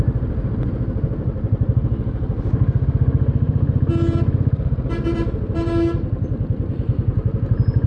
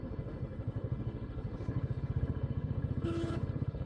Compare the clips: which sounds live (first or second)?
first